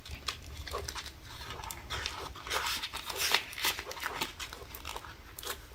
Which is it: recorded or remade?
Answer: recorded